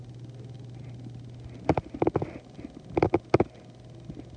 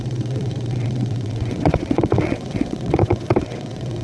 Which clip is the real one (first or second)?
first